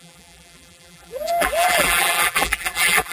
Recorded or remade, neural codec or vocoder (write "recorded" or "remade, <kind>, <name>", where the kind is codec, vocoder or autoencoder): remade, vocoder, BigVGAN v2